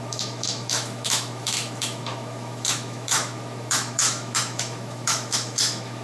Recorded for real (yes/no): no